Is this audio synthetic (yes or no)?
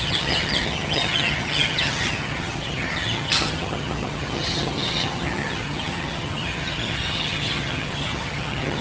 yes